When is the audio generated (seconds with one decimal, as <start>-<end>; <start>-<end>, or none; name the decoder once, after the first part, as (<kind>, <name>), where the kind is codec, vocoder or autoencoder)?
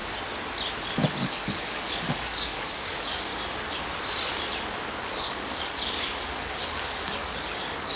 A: 1.2-3.3 (codec, DAC); 4.9-8.0